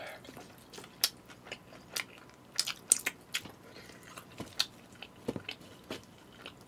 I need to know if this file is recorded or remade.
recorded